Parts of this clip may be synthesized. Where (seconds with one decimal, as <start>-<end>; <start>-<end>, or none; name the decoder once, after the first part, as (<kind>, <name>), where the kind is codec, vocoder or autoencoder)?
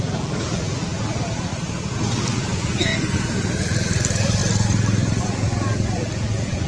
0.0-1.5 (vocoder, BigVGAN v2); 2.3-2.9; 3.6-4.4; 5.2-6.7